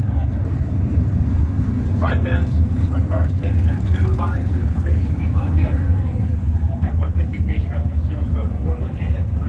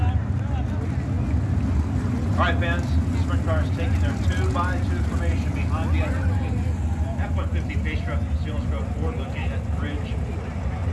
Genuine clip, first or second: second